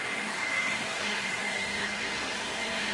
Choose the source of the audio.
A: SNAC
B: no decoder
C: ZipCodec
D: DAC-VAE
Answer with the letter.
A